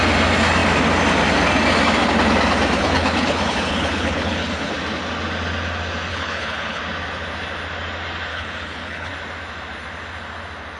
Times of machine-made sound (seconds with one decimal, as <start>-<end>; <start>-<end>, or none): 2.8-4.7; 6.1-6.8; 8.3-9.1